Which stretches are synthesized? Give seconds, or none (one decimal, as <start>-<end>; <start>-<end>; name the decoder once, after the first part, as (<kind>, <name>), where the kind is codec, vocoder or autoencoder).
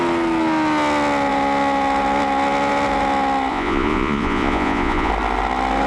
3.5-5.1 (vocoder, Vocos)